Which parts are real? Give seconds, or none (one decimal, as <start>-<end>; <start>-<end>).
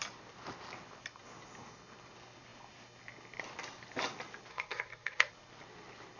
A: 0.0-4.5; 5.3-6.2